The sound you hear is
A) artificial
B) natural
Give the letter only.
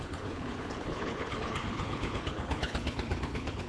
A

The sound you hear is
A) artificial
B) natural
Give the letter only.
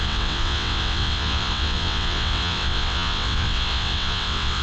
A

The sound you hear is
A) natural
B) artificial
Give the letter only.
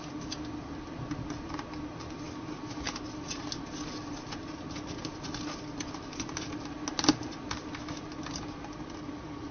A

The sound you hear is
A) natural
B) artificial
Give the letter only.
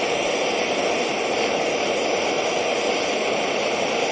A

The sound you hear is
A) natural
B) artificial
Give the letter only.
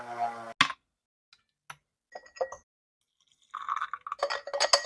A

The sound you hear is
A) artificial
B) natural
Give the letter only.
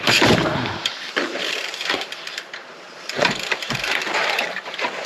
A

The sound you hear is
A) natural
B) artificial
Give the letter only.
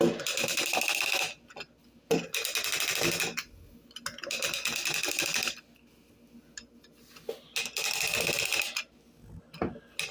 A